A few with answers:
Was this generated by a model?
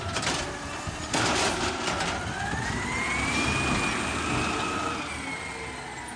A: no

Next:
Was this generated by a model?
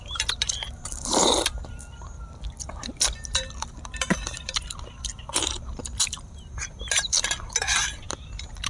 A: yes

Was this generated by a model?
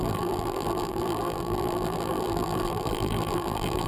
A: yes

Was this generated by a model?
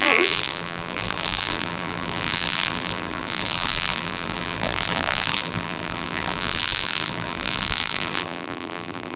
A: yes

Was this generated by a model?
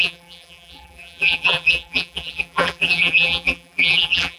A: yes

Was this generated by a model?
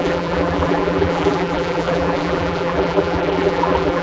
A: yes